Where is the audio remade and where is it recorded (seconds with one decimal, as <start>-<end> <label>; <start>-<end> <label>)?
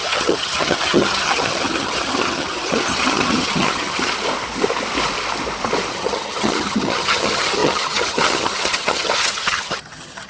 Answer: 0.0-4.1 remade; 4.1-5.9 recorded; 5.9-10.3 remade